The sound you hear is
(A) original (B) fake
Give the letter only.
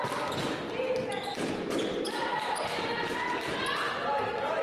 A